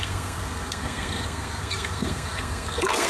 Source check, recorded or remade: remade